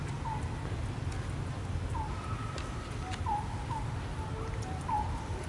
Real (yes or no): yes